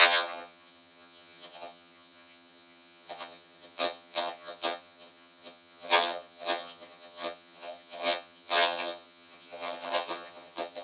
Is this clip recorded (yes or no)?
no